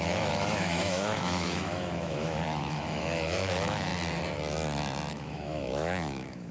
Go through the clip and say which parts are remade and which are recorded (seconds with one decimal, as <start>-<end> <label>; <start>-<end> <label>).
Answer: 0.0-3.9 remade; 3.9-5.1 recorded; 5.1-6.5 remade